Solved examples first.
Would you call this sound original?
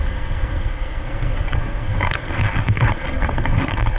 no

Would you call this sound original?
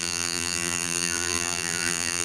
no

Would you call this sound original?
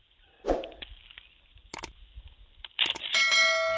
yes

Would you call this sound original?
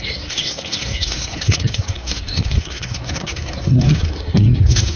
no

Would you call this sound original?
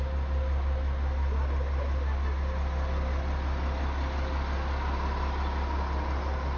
yes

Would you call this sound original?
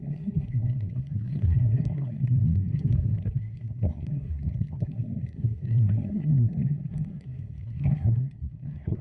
no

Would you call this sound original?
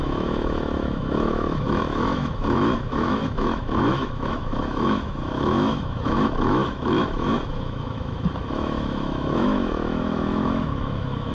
no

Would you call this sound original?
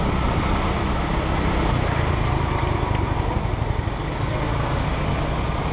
yes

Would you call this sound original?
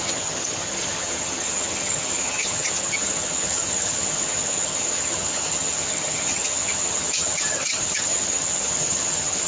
no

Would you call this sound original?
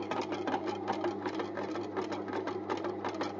yes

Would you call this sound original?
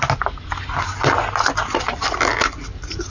yes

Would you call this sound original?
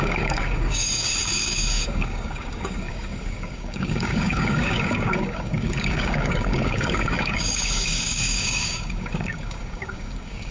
no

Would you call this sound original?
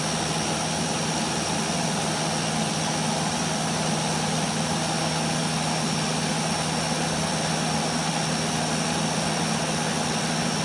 yes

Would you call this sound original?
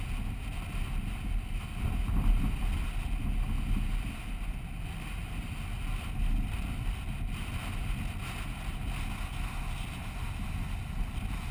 yes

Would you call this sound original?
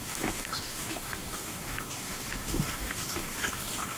no